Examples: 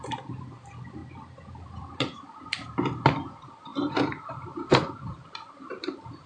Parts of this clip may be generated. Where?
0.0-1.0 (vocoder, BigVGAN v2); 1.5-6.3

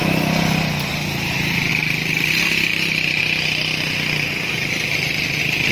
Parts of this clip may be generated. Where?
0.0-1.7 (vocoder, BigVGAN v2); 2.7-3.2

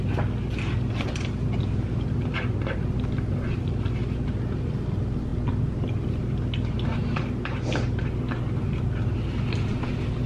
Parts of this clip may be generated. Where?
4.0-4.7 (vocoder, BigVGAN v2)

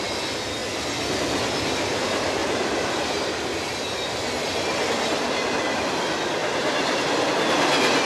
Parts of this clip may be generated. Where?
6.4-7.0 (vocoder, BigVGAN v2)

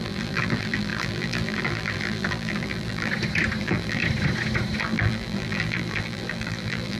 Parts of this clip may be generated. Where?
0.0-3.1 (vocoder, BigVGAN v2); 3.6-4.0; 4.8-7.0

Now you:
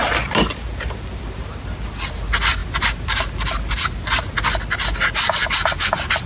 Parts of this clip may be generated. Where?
none

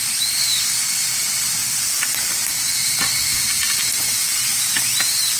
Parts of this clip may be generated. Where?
none

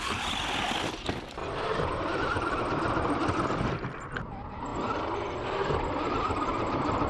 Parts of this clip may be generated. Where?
1.4-2.6 (vocoder, BigVGAN v2)